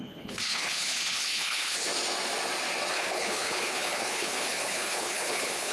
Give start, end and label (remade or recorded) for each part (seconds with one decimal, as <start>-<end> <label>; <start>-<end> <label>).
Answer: 0.0-1.9 remade; 1.9-2.9 recorded; 2.9-5.7 remade